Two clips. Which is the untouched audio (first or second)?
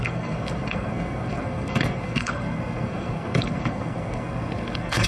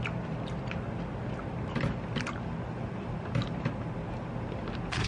second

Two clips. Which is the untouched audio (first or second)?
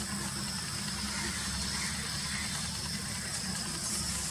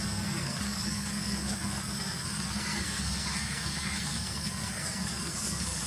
first